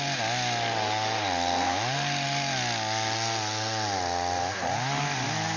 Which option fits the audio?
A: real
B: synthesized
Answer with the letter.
A